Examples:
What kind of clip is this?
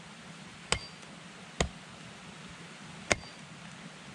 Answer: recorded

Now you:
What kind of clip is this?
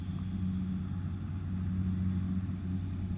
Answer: recorded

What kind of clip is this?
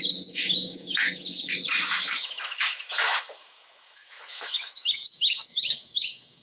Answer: remade